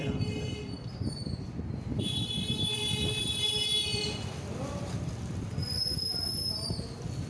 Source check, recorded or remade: remade